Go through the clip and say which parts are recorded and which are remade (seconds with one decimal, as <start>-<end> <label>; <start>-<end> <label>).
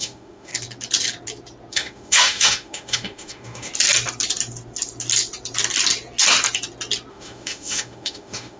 0.0-0.5 remade; 0.5-1.7 recorded; 1.7-3.7 remade; 3.7-7.1 recorded; 7.1-8.6 remade